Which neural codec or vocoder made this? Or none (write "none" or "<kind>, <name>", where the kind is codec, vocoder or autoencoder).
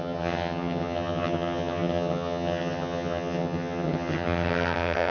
vocoder, HiFi-GAN